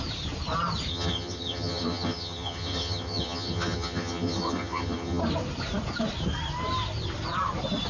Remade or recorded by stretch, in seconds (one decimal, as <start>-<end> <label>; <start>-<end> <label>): 0.0-0.9 recorded; 0.9-5.2 remade; 5.2-7.9 recorded